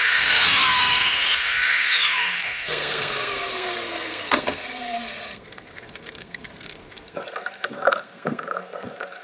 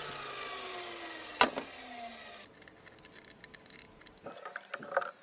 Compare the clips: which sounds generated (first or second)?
first